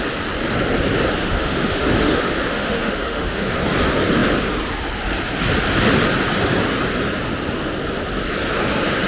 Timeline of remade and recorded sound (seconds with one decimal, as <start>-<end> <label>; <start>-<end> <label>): 0.0-1.2 recorded; 1.2-3.6 remade; 3.6-9.1 recorded